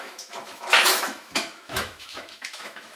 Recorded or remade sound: remade